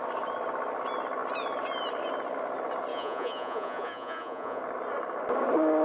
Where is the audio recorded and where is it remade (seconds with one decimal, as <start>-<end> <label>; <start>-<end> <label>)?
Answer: 0.0-2.9 recorded; 2.9-4.6 remade; 4.6-5.8 recorded